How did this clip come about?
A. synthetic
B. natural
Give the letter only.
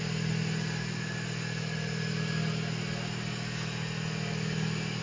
B